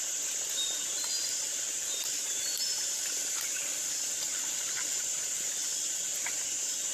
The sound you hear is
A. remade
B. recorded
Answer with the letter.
B